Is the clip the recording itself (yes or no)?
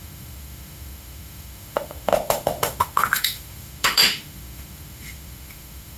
no